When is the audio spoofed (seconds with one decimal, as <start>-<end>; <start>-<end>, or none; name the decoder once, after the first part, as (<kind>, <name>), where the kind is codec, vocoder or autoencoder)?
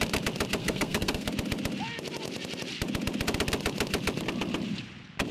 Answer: 0.6-1.3 (codec, SNAC)